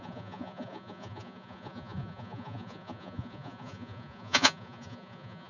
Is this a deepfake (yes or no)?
yes